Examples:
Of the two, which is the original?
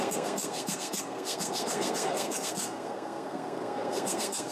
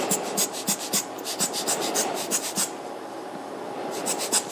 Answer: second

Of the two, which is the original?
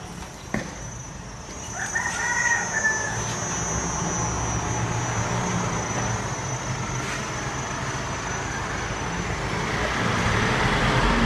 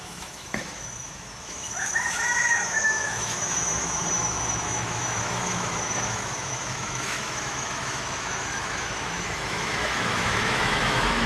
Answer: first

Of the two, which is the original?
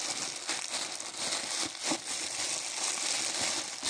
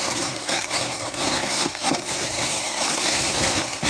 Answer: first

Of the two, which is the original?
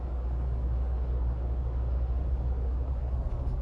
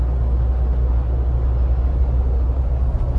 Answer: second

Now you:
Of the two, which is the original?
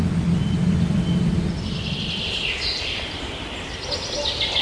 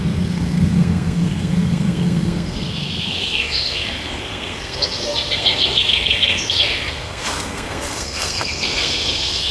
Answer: first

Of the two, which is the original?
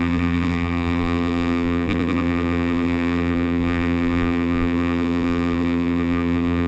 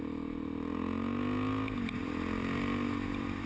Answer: second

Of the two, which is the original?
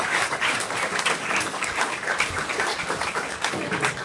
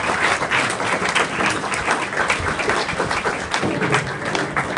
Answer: second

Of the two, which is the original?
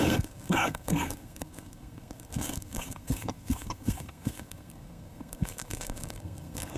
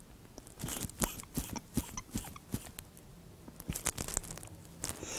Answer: second